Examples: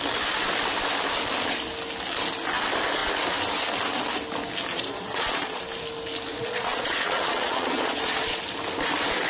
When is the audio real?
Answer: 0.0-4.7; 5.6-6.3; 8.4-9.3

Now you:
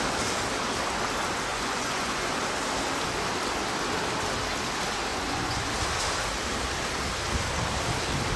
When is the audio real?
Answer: 0.0-1.5; 2.4-5.1; 5.7-8.4

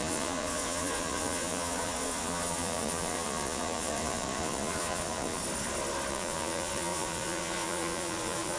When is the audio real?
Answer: 5.4-6.1

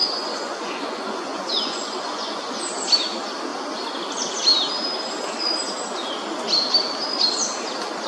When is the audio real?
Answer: 2.6-8.1